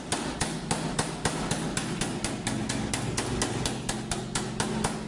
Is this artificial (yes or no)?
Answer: no